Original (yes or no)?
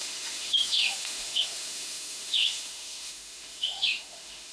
no